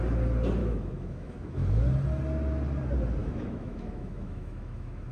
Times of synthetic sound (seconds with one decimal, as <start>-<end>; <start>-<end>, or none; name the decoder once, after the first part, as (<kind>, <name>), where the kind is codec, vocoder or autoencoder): 0.6-1.8 (autoencoder, DAC-VAE); 3.2-5.1